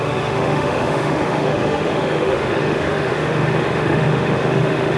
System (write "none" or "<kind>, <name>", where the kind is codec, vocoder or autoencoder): autoencoder, DAC-VAE